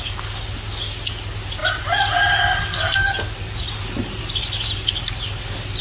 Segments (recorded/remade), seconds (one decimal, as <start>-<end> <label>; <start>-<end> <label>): 0.0-5.8 recorded

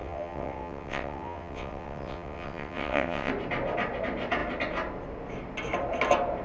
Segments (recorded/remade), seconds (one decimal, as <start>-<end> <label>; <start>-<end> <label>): 0.0-3.3 remade; 3.3-6.4 recorded

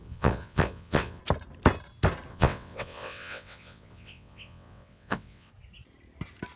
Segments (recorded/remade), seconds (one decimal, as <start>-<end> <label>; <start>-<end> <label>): 0.0-1.2 remade; 1.2-2.3 recorded; 2.3-5.5 remade; 5.5-6.6 recorded

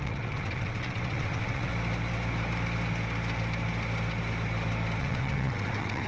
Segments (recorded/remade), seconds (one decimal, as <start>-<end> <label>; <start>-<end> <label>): 0.0-1.7 remade; 1.7-5.0 recorded; 5.0-6.1 remade

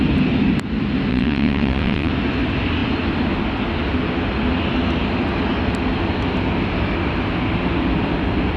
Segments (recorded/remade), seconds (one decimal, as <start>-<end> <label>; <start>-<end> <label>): 0.0-1.1 recorded; 1.1-2.1 remade; 2.1-8.6 recorded

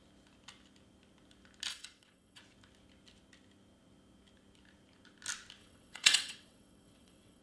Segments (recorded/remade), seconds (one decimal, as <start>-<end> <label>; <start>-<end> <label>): 0.0-1.7 recorded; 1.7-2.4 remade; 2.4-5.6 recorded; 5.6-7.4 remade

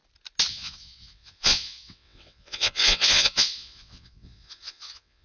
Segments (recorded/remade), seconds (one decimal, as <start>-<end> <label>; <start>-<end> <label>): 0.0-0.5 recorded; 0.5-5.2 remade

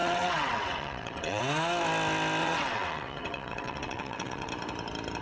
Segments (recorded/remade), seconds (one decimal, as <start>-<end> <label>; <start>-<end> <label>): 0.0-1.4 remade; 1.4-2.4 recorded; 2.4-4.5 remade; 4.5-5.2 recorded